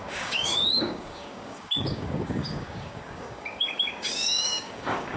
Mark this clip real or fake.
fake